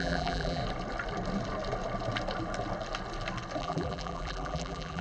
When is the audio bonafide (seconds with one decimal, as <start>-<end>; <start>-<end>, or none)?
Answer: 0.6-3.6